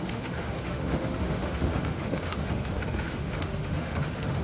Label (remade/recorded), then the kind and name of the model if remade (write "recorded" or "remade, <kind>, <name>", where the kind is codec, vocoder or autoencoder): remade, autoencoder, DAC-VAE